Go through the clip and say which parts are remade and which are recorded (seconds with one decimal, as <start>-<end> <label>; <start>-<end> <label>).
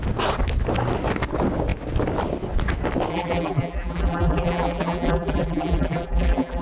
0.0-3.1 recorded; 3.1-6.6 remade